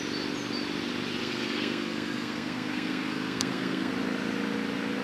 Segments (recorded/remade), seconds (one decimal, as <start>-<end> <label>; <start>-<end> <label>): 0.0-1.2 recorded; 1.2-3.9 remade; 3.9-5.0 recorded